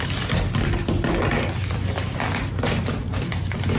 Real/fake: real